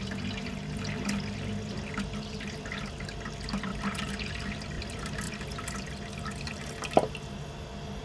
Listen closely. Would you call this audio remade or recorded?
recorded